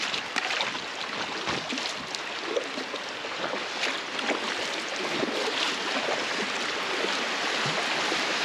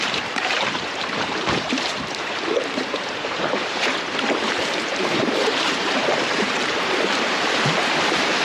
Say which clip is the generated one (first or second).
second